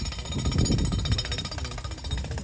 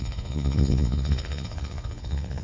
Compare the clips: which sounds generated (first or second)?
second